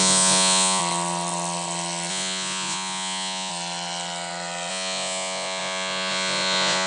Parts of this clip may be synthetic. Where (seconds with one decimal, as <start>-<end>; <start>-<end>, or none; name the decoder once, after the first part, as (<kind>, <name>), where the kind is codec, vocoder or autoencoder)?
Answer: 0.0-0.8 (vocoder, Vocos); 2.1-3.5; 4.7-6.9